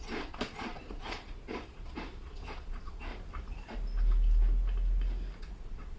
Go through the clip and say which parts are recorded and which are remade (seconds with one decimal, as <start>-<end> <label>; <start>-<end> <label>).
0.0-3.1 remade; 3.1-5.4 recorded; 5.4-6.0 remade